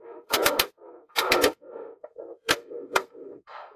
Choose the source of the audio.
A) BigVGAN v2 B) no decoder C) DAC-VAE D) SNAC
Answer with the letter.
D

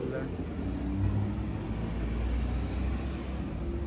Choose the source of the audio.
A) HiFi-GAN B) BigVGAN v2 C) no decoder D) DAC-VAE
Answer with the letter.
C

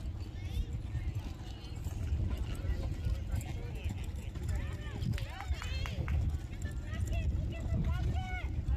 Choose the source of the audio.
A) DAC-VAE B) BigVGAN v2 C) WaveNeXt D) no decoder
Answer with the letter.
D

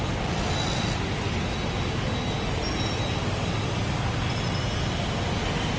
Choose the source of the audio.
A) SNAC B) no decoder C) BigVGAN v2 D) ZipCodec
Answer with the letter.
B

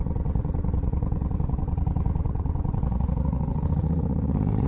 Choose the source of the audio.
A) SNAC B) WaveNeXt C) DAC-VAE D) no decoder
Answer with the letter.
B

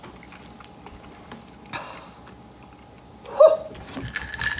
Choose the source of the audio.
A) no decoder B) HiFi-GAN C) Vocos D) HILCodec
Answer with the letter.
A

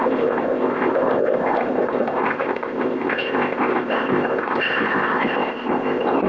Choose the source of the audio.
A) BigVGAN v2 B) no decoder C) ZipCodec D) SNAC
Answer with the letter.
C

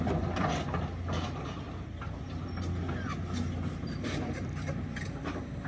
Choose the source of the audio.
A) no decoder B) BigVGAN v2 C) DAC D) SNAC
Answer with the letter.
A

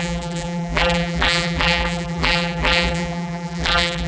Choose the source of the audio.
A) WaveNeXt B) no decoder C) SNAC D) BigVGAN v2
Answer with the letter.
D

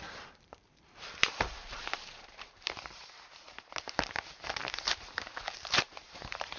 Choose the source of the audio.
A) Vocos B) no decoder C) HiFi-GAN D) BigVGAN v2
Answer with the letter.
D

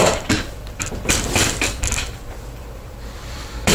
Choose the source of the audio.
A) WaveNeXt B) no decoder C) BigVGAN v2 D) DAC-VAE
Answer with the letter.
C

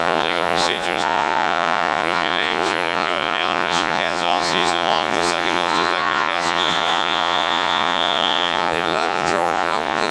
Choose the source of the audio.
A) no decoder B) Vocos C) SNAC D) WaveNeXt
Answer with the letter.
B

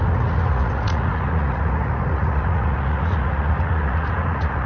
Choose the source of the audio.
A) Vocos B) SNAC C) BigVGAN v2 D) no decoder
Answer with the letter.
A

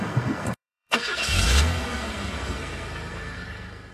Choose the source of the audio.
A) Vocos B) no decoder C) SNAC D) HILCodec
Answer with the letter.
C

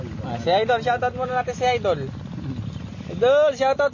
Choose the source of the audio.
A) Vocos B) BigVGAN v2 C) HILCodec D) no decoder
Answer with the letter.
D